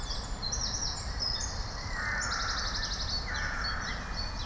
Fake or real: real